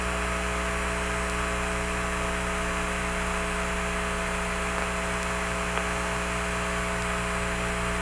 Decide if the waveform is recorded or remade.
recorded